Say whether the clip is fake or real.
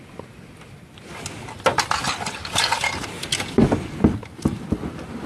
real